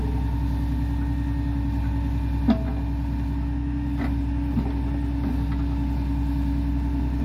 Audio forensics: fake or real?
real